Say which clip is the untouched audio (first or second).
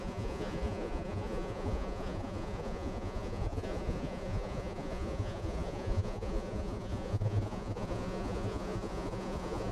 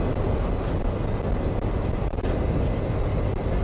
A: second